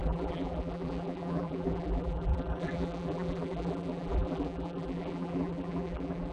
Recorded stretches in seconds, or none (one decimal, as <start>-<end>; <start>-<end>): none